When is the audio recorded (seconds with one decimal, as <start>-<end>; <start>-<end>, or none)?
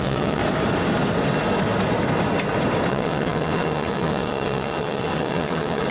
0.4-2.9